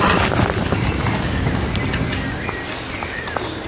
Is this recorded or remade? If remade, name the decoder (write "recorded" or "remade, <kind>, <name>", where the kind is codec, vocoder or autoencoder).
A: recorded